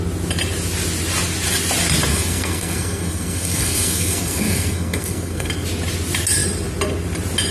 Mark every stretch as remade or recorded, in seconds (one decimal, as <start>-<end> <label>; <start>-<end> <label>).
0.0-2.1 recorded; 2.1-5.5 remade; 5.5-7.5 recorded